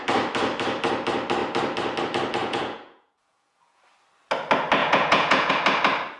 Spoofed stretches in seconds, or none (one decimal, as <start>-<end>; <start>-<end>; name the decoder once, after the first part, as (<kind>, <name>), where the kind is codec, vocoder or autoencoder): 2.4-3.8 (vocoder, Vocos); 4.8-5.5